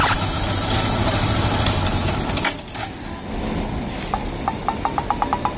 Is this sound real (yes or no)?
yes